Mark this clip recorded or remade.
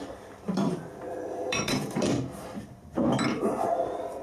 remade